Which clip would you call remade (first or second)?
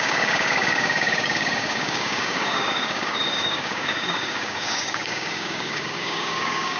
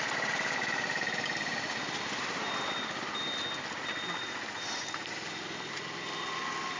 first